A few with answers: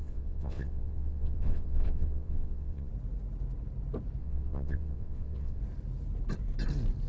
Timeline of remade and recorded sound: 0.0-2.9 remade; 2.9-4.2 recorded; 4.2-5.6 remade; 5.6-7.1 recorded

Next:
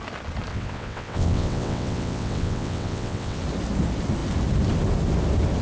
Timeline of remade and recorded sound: 0.0-0.5 recorded; 0.5-3.4 remade; 3.4-5.6 recorded

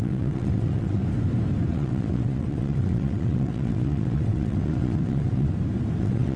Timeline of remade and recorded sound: 0.0-1.0 remade; 1.0-1.7 recorded; 1.7-5.5 remade; 5.5-6.0 recorded; 6.0-6.4 remade

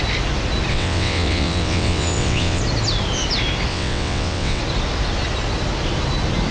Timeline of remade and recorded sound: 0.0-0.7 recorded; 0.7-2.6 remade; 2.6-3.7 recorded; 3.7-4.6 remade; 4.6-6.5 recorded

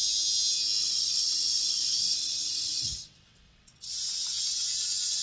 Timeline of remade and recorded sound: 0.0-0.8 recorded; 0.8-3.9 remade; 3.9-5.2 recorded

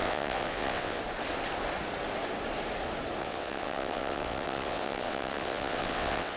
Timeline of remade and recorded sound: 0.0-1.0 remade; 1.0-3.2 recorded; 3.2-6.4 remade

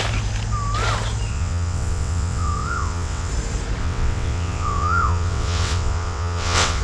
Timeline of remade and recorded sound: 0.0-1.3 recorded; 1.3-3.3 remade; 3.3-3.8 recorded; 3.8-6.8 remade